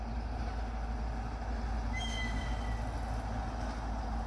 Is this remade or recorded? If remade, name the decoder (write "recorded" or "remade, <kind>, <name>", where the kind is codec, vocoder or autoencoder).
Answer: recorded